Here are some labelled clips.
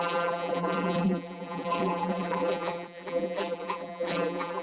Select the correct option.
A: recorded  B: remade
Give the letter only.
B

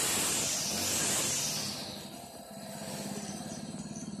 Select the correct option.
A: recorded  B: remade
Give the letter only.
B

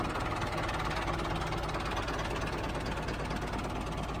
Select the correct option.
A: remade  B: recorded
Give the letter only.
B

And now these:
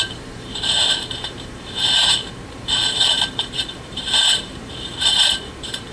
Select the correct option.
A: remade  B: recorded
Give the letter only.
A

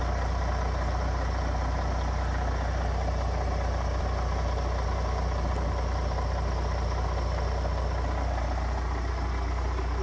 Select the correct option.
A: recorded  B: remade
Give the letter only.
A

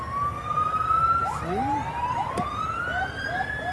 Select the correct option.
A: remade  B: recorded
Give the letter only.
B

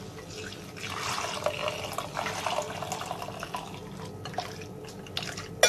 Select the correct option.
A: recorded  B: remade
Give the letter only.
A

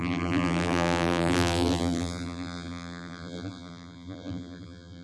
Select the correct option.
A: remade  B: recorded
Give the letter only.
A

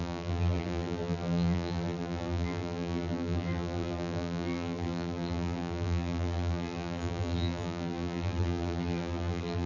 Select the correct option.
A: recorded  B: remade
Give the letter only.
B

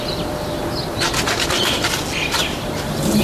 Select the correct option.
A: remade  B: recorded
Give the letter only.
B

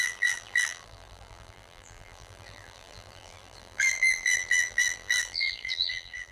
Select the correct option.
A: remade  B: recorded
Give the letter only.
A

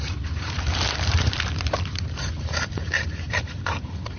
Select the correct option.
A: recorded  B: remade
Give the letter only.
B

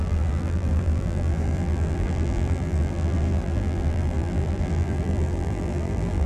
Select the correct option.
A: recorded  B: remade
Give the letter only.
B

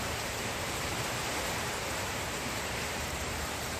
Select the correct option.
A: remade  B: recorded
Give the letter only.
A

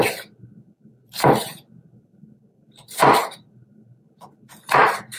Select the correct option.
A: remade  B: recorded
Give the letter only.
A